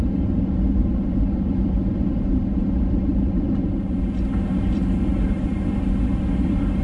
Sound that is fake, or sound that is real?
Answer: fake